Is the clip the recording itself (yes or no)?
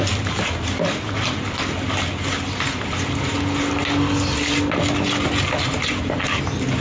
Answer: yes